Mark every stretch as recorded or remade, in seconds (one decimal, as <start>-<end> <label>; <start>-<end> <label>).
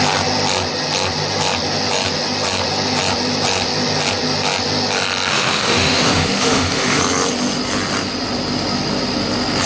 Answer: 0.0-5.3 recorded; 5.3-7.0 remade; 7.0-9.7 recorded